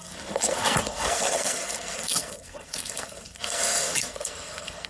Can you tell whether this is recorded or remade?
remade